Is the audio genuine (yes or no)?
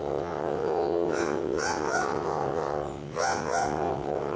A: no